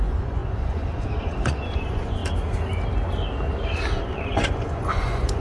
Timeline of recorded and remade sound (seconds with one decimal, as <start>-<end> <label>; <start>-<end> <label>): 0.0-2.2 remade; 2.2-3.9 recorded; 3.9-5.4 remade